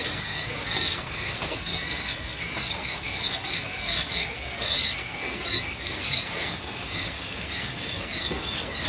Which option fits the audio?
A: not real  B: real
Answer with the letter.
A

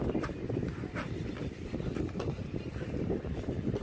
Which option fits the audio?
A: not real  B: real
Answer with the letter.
B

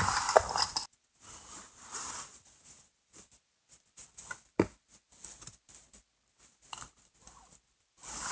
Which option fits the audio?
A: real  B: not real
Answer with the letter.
A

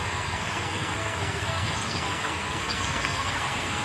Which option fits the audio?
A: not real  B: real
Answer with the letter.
A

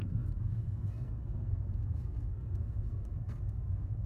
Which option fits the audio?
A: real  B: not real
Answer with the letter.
B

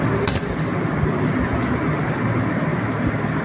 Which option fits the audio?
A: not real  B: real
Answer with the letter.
B